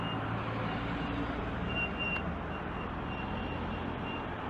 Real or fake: real